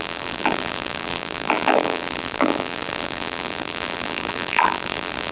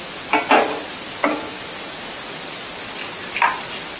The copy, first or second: first